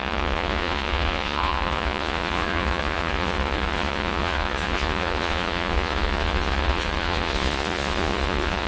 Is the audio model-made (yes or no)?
yes